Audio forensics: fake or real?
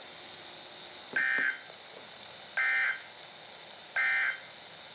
real